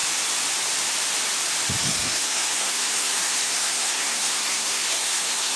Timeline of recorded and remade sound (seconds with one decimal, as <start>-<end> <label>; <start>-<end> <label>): 0.0-1.8 recorded; 1.8-5.6 remade